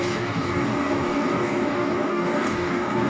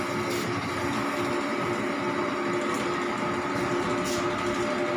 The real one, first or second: second